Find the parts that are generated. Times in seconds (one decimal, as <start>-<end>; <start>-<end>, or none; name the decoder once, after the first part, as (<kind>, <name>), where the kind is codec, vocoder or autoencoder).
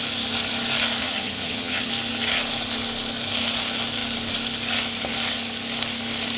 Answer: 1.0-1.9 (vocoder, HiFi-GAN)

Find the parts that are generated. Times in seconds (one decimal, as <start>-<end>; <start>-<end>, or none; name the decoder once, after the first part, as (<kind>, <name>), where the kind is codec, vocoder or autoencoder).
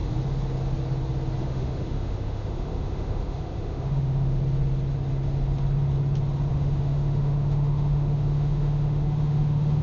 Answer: 1.4-4.4 (autoencoder, DAC-VAE); 6.5-9.8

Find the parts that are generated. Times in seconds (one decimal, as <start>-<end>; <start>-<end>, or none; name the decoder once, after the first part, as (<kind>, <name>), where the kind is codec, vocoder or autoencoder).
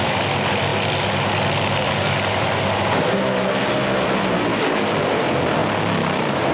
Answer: none